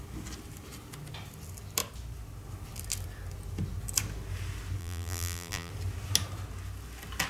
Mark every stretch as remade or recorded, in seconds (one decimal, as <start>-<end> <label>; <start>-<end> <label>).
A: 0.0-4.8 recorded; 4.8-5.7 remade; 5.7-7.3 recorded